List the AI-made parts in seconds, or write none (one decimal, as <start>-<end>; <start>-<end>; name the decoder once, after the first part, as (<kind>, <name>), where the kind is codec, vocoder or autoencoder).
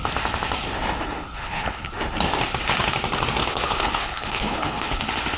1.4-1.9 (codec, HILCodec); 3.4-5.0